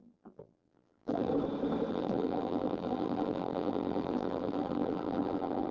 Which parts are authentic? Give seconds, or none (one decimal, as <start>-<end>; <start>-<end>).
1.3-1.9